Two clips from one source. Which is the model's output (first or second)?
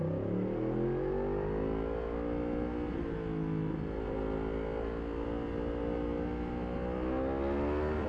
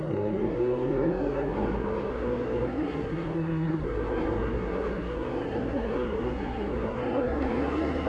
second